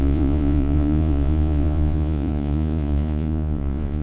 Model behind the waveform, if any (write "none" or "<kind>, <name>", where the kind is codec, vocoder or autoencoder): vocoder, Vocos